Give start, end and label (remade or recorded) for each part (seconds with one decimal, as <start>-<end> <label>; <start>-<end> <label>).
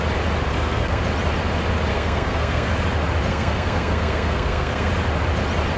0.0-0.5 recorded; 0.5-1.0 remade; 1.0-1.9 recorded; 1.9-2.7 remade; 2.7-3.3 recorded; 3.3-4.9 remade; 4.9-5.8 recorded